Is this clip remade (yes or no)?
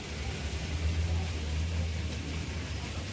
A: no